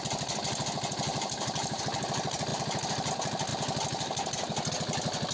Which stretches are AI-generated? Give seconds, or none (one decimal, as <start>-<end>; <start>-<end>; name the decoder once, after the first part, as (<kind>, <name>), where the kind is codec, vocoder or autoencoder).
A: 1.1-1.8 (vocoder, BigVGAN v2)